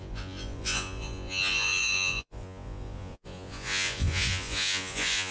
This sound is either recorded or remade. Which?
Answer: remade